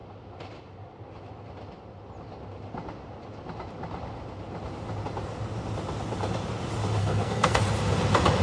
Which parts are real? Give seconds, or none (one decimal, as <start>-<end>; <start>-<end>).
0.0-7.0; 7.6-8.4